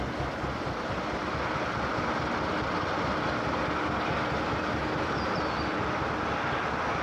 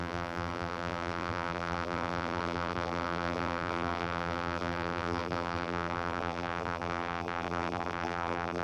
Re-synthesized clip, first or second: second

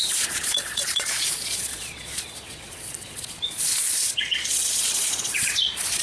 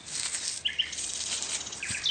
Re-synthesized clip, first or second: first